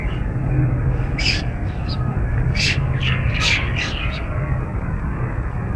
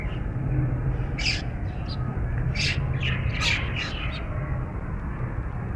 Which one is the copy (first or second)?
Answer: first